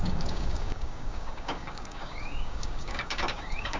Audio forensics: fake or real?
fake